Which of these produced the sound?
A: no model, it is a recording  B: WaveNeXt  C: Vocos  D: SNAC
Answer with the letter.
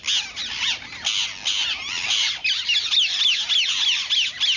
A